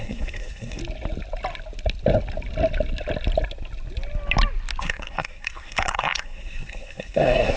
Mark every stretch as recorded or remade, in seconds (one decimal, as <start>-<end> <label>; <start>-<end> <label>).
0.0-0.8 remade; 0.8-4.8 recorded; 4.8-7.6 remade